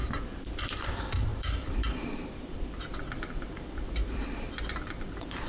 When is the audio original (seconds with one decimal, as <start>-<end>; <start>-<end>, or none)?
0.0-0.6

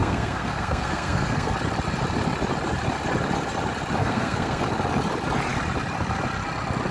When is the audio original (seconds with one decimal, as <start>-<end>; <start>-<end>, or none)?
1.5-4.0; 4.6-6.9

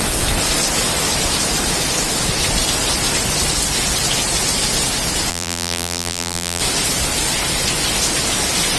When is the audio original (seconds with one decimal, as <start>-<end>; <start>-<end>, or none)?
0.0-5.3; 6.6-8.8

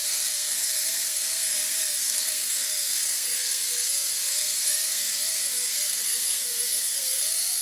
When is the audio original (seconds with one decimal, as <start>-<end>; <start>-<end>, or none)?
none